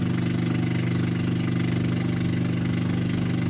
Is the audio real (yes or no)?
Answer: yes